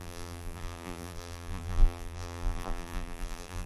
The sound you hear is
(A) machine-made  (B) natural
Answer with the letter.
A